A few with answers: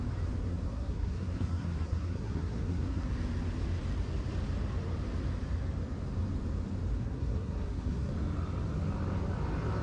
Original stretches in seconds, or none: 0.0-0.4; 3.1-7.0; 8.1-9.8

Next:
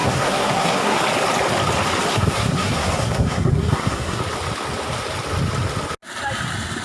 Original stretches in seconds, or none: 1.0-2.1; 4.2-6.8

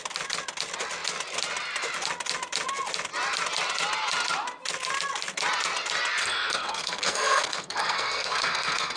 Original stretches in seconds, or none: 0.0-6.2